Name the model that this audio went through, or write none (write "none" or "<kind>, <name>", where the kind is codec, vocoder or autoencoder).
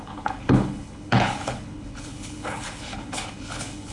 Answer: codec, HILCodec